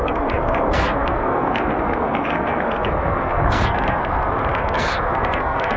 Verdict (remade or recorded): remade